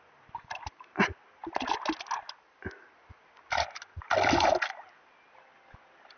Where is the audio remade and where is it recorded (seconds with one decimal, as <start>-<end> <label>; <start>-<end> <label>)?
0.0-6.2 recorded